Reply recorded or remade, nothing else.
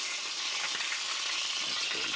recorded